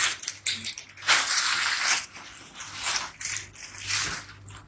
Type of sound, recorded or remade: recorded